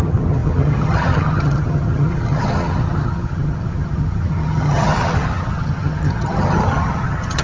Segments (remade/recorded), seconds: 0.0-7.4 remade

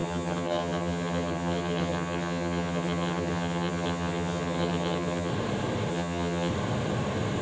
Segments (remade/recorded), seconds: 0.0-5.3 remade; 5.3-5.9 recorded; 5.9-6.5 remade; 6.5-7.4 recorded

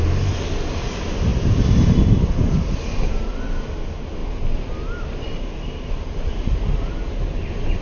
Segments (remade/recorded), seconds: 0.0-7.8 recorded

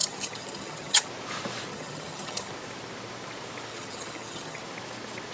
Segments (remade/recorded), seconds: 0.0-1.1 remade; 1.1-1.7 recorded; 1.7-2.5 remade; 2.5-3.7 recorded; 3.7-4.6 remade; 4.6-5.3 recorded

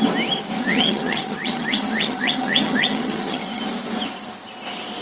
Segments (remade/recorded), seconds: 0.0-0.6 recorded; 0.6-3.6 remade; 3.6-5.0 recorded

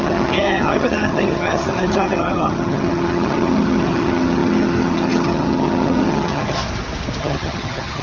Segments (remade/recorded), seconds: 0.0-6.6 remade; 6.6-7.2 recorded; 7.2-8.0 remade

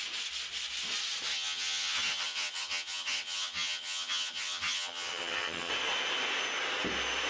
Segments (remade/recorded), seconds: 0.0-1.3 recorded; 1.3-5.7 remade; 5.7-7.3 recorded